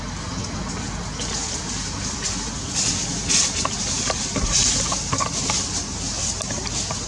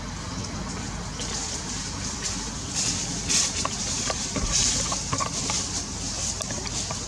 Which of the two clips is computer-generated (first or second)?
second